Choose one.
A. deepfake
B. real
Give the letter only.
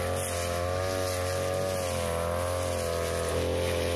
B